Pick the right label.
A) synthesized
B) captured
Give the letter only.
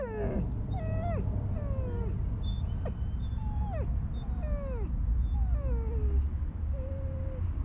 B